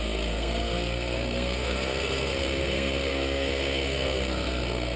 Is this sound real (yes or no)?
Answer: no